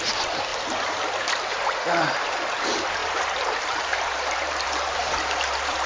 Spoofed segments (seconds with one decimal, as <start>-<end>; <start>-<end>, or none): 3.0-5.9